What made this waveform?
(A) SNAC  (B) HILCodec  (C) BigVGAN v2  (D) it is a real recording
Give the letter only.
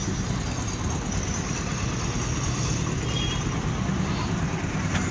D